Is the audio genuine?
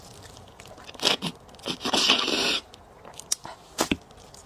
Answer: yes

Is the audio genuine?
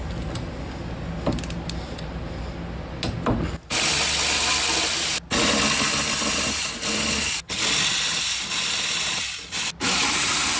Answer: yes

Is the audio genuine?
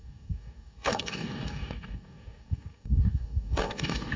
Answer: no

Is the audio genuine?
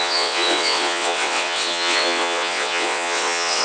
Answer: no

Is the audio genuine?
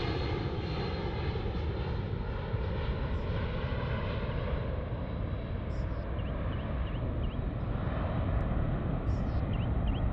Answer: yes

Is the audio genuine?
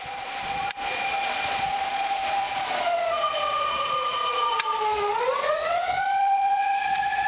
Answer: no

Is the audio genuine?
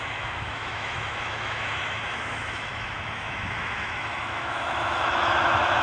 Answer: no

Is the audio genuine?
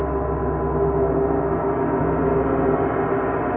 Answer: yes